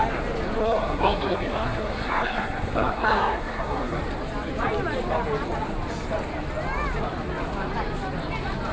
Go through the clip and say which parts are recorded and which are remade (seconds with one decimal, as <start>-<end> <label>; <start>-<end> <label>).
0.0-0.6 recorded; 0.6-4.0 remade; 4.0-8.7 recorded